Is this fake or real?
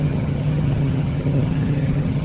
fake